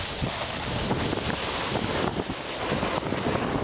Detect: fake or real real